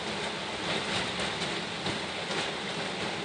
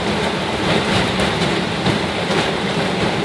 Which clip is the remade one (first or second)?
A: second